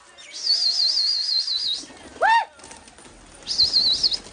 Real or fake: real